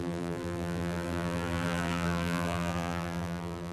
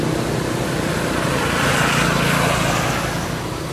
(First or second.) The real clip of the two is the second